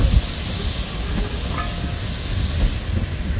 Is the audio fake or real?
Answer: real